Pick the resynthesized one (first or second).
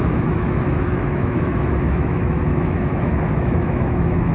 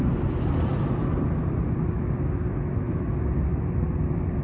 first